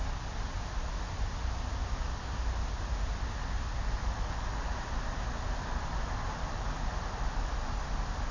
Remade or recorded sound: recorded